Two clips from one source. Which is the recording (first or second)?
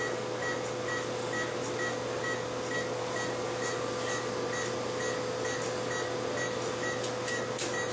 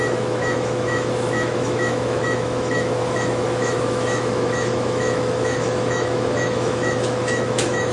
first